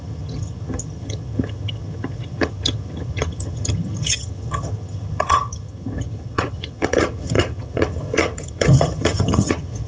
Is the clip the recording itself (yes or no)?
no